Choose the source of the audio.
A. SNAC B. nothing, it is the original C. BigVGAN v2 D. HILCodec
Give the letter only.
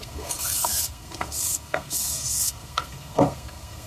A